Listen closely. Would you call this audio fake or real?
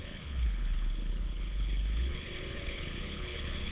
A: fake